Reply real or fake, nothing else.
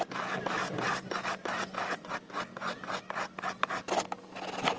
real